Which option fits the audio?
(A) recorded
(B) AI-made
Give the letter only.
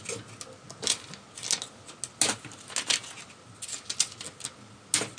A